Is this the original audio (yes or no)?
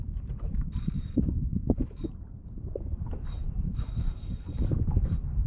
no